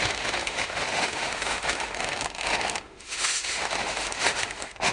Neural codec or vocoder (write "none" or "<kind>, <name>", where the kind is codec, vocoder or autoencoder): autoencoder, DAC-VAE